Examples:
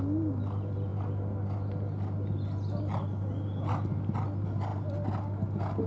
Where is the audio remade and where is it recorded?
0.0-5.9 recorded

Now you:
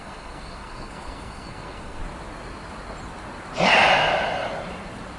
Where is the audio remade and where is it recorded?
0.0-2.0 remade; 2.0-5.2 recorded

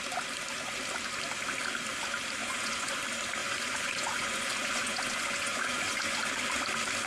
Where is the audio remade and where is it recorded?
0.0-2.4 recorded; 2.4-3.0 remade; 3.0-3.4 recorded; 3.4-6.2 remade; 6.2-7.1 recorded

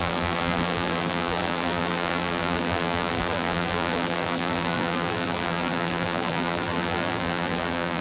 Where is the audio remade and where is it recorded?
0.0-8.0 remade

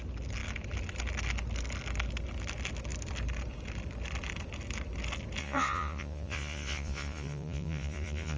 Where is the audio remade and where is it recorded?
0.0-5.4 recorded; 5.4-8.4 remade

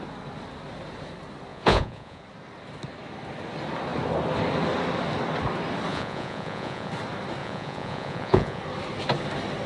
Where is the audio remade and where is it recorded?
0.0-1.5 recorded; 1.5-2.2 remade; 2.2-5.9 recorded; 5.9-6.9 remade; 6.9-7.4 recorded; 7.4-8.6 remade; 8.6-9.7 recorded

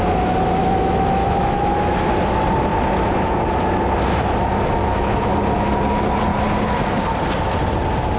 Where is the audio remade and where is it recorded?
0.0-0.6 recorded; 0.6-2.1 remade; 2.1-4.8 recorded; 4.8-5.4 remade; 5.4-8.2 recorded